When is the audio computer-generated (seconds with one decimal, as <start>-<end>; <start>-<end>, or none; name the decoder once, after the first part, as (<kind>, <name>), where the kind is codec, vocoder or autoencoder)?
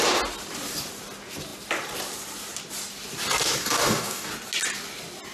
3.6-4.3 (codec, DAC)